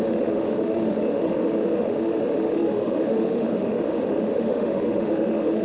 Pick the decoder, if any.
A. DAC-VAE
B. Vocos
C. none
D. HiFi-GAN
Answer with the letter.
A